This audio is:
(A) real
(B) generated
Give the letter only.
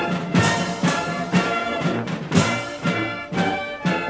B